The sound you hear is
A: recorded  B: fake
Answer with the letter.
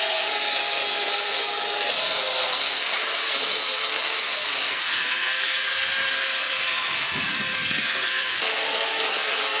B